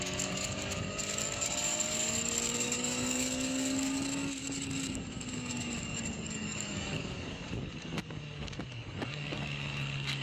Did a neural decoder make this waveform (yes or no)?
yes